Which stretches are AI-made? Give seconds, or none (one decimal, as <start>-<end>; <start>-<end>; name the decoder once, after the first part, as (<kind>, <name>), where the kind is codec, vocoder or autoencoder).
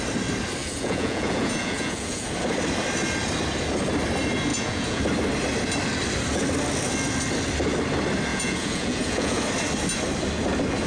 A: 0.6-2.3 (vocoder, Vocos); 4.5-5.0; 8.3-9.4